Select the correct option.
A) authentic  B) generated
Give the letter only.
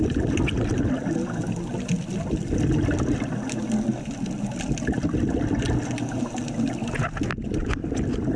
A